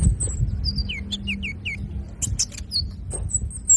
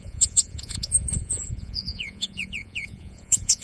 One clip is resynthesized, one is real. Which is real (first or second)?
first